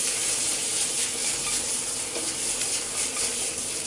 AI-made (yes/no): no